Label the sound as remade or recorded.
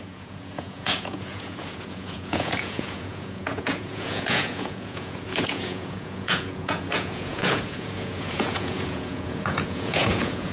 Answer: remade